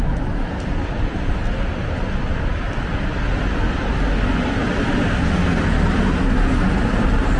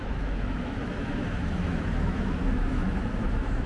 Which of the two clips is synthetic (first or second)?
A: second